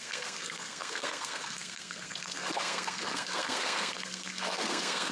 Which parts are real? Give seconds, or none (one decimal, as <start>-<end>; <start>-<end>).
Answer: none